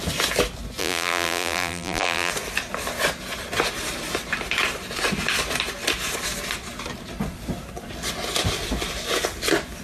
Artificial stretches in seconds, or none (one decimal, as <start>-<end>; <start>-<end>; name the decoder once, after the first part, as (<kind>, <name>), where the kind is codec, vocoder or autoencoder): 0.8-2.3 (vocoder, BigVGAN v2)